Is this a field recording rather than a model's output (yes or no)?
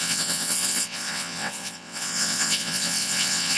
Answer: no